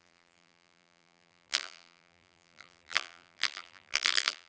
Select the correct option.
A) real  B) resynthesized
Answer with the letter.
B